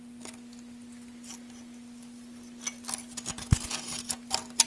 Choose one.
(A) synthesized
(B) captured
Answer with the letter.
B